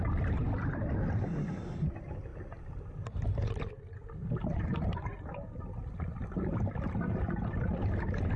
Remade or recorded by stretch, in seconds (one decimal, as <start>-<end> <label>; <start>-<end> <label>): 0.0-8.4 recorded